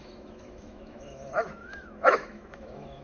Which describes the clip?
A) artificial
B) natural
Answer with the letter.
A